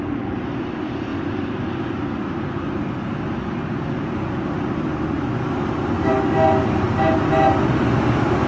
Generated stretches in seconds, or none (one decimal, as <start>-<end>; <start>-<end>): none